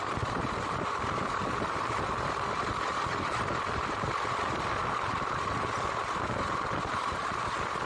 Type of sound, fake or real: real